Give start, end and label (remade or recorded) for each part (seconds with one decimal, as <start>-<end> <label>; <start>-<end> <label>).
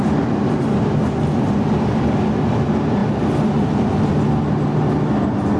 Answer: 0.0-5.6 recorded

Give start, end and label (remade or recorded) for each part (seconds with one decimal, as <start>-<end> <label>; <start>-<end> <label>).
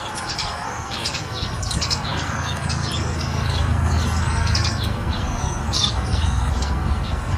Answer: 0.0-7.4 remade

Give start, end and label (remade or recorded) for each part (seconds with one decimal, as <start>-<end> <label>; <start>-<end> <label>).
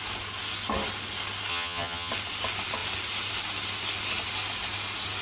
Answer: 0.0-1.5 recorded; 1.5-2.1 remade; 2.1-5.2 recorded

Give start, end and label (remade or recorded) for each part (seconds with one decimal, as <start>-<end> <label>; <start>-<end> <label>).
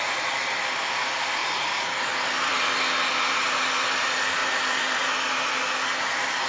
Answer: 0.0-4.4 recorded; 4.4-5.0 remade; 5.0-6.5 recorded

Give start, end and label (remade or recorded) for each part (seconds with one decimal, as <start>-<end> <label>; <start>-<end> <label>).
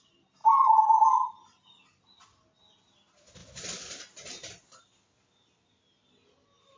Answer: 0.0-6.8 recorded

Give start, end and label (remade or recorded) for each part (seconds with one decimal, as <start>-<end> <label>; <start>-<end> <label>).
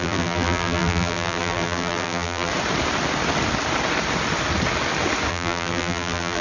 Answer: 0.0-2.5 remade; 2.5-5.3 recorded; 5.3-6.4 remade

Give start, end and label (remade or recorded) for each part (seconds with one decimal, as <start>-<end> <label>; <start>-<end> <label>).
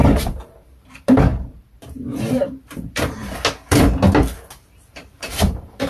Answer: 0.0-3.2 remade; 3.2-4.5 recorded; 4.5-5.9 remade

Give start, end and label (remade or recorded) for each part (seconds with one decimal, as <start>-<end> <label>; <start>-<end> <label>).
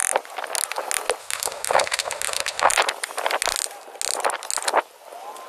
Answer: 0.0-1.2 recorded; 1.2-2.7 remade; 2.7-5.5 recorded